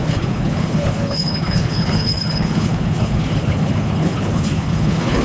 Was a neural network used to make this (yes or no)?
yes